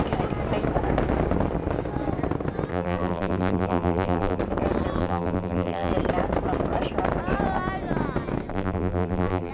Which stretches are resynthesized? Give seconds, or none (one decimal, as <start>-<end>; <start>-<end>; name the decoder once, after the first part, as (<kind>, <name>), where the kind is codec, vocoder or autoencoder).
2.7-4.4 (vocoder, BigVGAN v2); 5.0-5.9; 8.5-9.5